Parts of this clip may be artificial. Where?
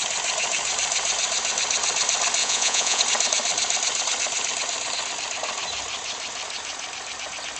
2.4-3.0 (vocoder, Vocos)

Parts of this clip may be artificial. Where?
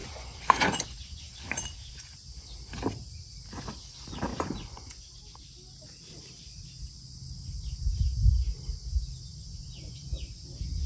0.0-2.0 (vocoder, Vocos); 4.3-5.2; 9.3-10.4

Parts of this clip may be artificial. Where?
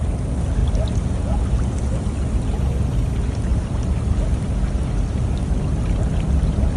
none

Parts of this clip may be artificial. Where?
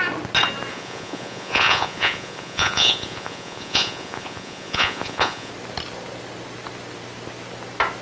0.7-5.5 (vocoder, Vocos)